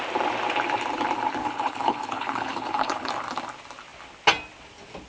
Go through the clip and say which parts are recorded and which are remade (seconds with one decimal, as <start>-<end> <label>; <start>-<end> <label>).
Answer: 0.0-1.4 recorded; 1.4-3.1 remade; 3.1-5.1 recorded